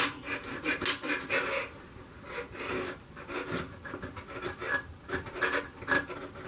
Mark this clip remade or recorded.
recorded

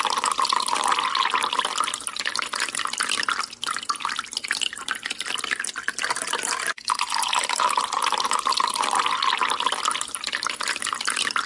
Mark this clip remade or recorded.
recorded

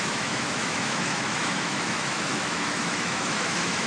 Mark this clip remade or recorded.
remade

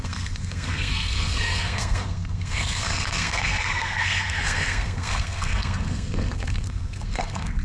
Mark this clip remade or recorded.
remade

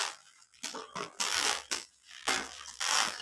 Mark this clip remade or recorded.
remade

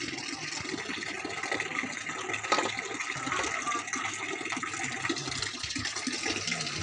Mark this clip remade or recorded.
recorded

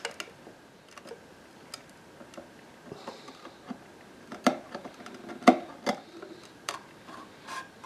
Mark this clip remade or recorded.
recorded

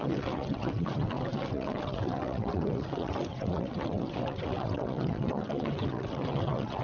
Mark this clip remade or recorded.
remade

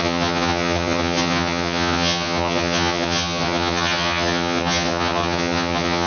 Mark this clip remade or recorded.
remade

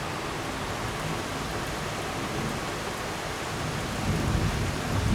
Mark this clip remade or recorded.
recorded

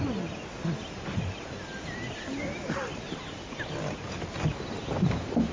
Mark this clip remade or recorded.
recorded